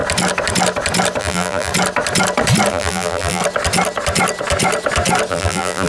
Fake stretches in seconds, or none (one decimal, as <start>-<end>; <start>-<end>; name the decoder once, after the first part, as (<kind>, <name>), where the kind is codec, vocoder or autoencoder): 1.2-1.7 (vocoder, BigVGAN v2); 2.7-3.4; 5.3-5.9